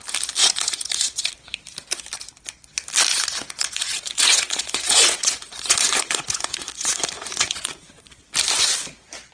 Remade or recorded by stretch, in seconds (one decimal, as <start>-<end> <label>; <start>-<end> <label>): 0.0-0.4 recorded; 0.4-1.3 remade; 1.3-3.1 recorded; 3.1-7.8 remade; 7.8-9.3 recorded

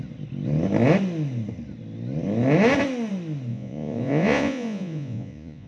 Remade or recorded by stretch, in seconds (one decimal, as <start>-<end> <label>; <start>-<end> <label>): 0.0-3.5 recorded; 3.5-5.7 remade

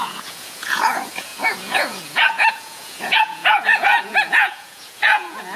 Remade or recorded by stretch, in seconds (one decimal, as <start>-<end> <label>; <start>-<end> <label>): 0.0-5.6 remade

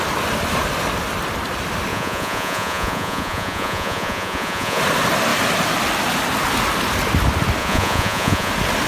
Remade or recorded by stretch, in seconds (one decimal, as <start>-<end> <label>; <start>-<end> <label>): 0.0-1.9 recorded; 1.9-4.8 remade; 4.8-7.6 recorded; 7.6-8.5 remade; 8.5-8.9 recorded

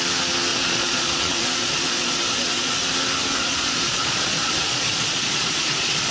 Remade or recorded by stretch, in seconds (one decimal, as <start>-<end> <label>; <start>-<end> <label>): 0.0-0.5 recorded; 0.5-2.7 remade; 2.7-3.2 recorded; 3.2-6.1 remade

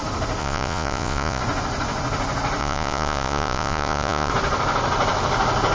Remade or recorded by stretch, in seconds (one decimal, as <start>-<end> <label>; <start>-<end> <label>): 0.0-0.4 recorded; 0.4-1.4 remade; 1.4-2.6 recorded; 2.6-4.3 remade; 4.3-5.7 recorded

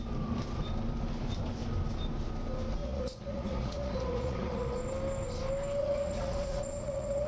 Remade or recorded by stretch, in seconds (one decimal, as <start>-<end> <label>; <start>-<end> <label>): 0.0-2.8 recorded; 2.8-4.8 remade; 4.8-5.8 recorded; 5.8-7.3 remade